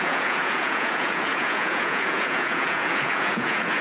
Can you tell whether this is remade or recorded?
remade